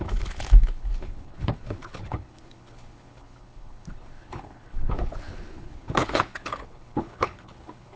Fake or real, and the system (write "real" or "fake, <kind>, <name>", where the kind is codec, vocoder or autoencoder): fake, codec, HILCodec